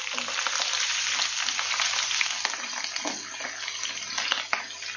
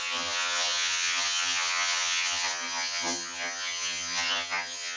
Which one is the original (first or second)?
first